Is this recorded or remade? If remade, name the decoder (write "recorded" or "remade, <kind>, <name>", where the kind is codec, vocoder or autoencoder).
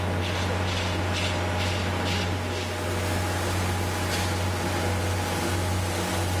recorded